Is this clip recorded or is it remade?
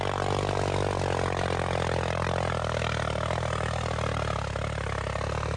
recorded